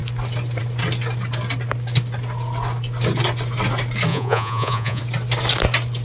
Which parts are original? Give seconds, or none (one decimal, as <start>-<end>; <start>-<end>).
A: 0.0-4.1; 5.0-6.0

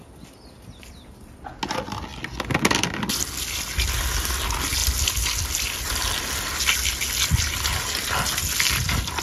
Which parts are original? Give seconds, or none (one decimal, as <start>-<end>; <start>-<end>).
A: 0.0-9.2

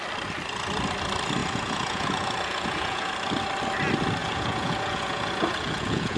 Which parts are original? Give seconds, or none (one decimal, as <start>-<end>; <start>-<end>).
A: 0.0-1.4; 3.1-4.2

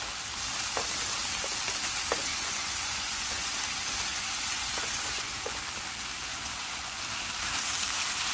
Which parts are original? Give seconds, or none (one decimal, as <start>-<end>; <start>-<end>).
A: 0.0-2.3; 3.5-4.1; 5.6-6.3; 7.0-8.3